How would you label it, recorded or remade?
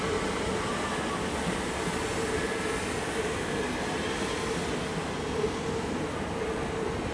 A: recorded